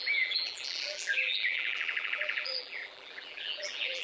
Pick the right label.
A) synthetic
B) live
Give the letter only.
A